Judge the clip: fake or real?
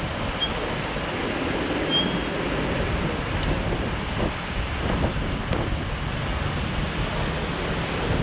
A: real